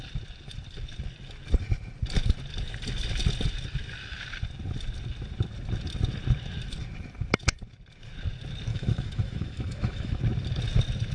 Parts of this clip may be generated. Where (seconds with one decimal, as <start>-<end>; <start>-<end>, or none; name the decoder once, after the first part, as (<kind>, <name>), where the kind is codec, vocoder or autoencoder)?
8.7-10.2 (autoencoder, DAC-VAE)